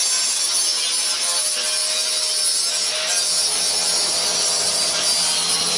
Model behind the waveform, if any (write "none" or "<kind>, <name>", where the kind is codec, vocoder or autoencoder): none